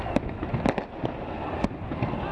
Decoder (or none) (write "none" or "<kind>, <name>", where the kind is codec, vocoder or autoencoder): none